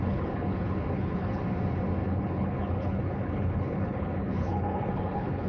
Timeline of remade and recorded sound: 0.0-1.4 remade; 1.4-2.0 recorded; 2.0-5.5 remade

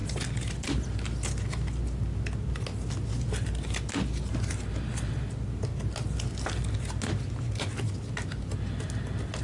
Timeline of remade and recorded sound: 0.0-9.4 recorded

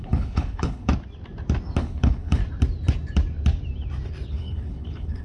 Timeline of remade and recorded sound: 0.0-0.9 remade; 0.9-1.8 recorded; 1.8-2.4 remade; 2.4-4.3 recorded; 4.3-5.2 remade

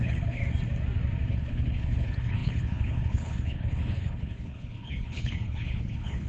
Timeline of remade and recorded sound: 0.0-0.4 remade; 0.4-1.3 recorded; 1.3-6.3 remade

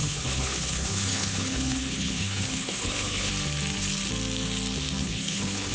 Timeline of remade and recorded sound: 0.0-3.3 remade; 3.3-5.0 recorded; 5.0-5.7 remade